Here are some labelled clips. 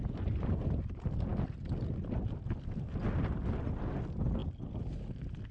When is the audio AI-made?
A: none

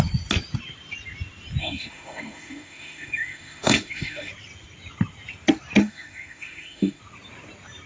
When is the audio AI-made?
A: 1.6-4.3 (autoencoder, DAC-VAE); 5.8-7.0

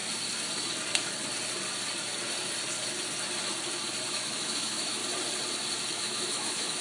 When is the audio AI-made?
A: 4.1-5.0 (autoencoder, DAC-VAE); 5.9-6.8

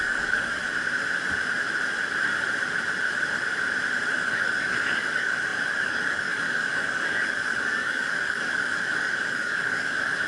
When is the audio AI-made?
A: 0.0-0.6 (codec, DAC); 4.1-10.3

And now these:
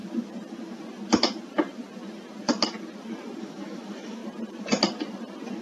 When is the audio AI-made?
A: 3.4-4.2 (autoencoder, DAC-VAE)

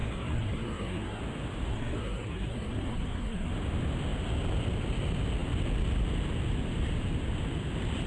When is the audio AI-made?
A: 0.0-1.2 (codec, SNAC); 1.7-3.5

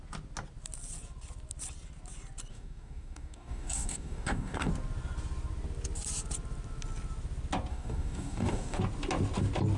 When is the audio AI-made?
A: 2.5-4.7 (codec, DAC); 7.7-8.8